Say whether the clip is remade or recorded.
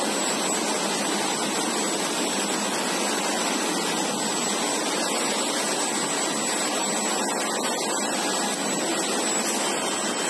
recorded